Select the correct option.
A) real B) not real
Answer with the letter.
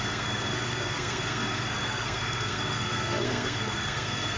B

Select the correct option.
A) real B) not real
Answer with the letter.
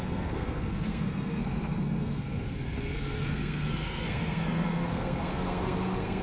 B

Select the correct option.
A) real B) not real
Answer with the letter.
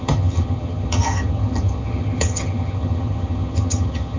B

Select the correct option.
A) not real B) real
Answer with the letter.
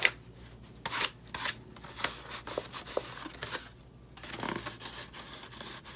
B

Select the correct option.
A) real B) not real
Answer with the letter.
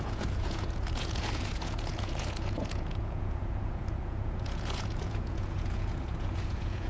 B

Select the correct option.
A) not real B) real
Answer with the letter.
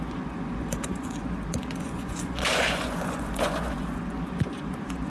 A